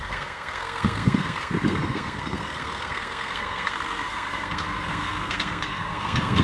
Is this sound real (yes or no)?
no